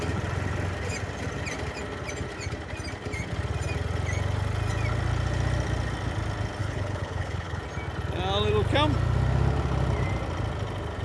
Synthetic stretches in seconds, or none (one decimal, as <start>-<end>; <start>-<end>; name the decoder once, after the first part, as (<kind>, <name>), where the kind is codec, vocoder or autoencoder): 6.6-7.6 (codec, HILCodec)